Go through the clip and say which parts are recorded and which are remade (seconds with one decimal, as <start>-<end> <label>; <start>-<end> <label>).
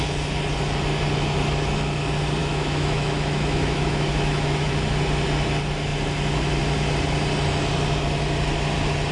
0.0-2.4 recorded; 2.4-4.7 remade; 4.7-9.1 recorded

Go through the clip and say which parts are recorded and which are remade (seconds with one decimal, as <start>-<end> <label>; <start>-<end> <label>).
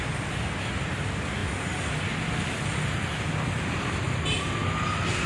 0.0-5.3 recorded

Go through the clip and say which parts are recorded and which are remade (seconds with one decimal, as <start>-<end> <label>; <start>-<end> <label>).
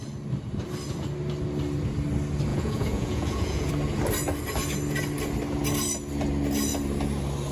0.0-2.5 recorded; 2.5-3.7 remade; 3.7-7.5 recorded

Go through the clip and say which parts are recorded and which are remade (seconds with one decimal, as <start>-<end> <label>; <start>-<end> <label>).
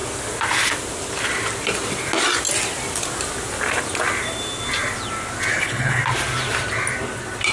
0.0-5.5 recorded; 5.5-6.0 remade; 6.0-7.5 recorded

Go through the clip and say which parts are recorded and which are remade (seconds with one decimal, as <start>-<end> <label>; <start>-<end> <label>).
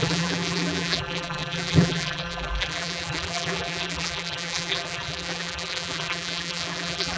0.0-7.2 remade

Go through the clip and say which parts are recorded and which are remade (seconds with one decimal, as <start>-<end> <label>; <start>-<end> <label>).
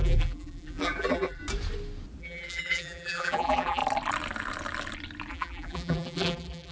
0.0-1.4 remade; 1.4-2.2 recorded; 2.2-3.8 remade; 3.8-5.3 recorded; 5.3-6.7 remade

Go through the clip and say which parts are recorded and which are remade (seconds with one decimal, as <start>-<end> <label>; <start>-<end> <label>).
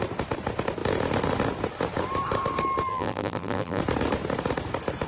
0.0-2.9 recorded; 2.9-3.8 remade; 3.8-5.1 recorded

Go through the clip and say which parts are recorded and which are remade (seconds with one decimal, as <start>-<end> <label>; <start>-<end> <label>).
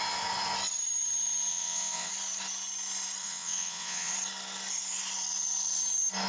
0.0-1.5 recorded; 1.5-2.1 remade; 2.1-3.2 recorded; 3.2-4.1 remade; 4.1-6.3 recorded